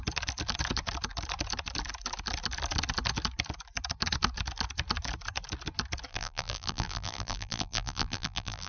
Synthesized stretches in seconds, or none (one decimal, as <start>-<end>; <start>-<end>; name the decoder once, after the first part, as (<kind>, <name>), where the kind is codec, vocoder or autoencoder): 6.1-8.7 (vocoder, BigVGAN v2)